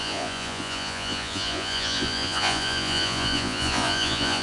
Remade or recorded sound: remade